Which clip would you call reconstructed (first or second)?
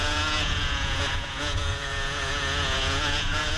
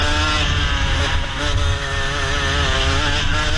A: first